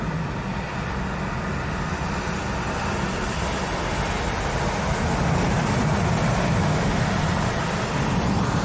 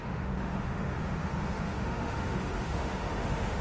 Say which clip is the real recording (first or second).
first